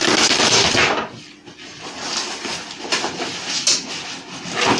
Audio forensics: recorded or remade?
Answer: recorded